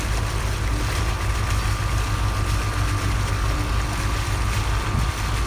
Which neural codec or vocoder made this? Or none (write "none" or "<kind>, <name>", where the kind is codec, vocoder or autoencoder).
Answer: none